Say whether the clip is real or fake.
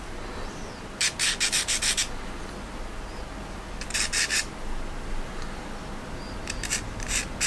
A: real